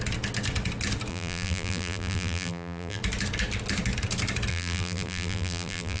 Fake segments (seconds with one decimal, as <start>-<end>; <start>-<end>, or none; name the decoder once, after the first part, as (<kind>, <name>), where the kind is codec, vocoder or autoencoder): 1.1-3.0 (vocoder, BigVGAN v2); 4.5-6.0